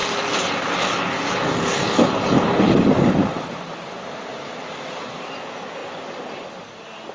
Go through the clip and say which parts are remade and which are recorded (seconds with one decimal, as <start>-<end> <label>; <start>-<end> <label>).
0.0-7.1 recorded